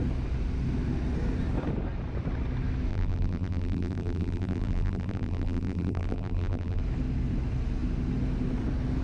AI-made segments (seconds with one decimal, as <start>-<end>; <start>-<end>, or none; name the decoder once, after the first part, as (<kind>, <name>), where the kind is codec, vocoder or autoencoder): 2.9-6.8 (vocoder, BigVGAN v2)